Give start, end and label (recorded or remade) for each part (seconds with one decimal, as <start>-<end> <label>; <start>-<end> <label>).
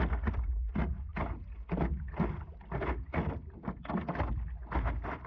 0.0-5.3 recorded